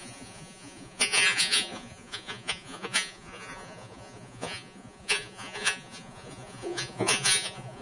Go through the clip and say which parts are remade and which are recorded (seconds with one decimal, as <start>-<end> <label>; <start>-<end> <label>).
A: 0.0-7.8 remade